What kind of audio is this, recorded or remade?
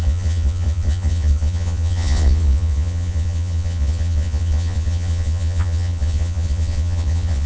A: remade